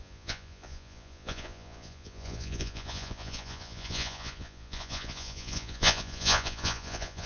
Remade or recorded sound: remade